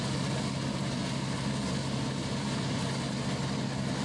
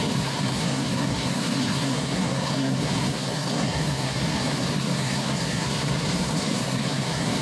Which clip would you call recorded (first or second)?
first